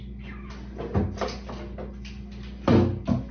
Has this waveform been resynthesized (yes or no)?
no